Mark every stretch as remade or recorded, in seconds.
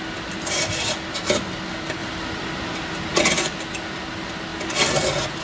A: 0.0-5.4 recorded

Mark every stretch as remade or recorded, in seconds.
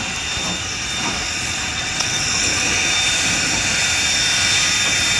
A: 0.0-1.7 recorded; 1.7-2.3 remade; 2.3-5.2 recorded